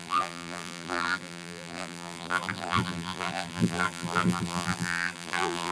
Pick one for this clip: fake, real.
fake